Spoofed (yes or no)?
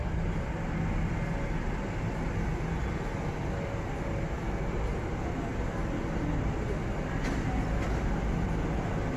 no